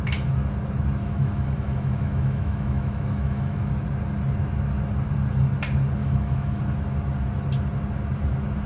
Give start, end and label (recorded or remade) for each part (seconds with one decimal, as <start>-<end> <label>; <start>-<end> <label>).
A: 0.0-1.0 recorded; 1.0-3.7 remade; 3.7-6.0 recorded; 6.0-6.6 remade; 6.6-8.7 recorded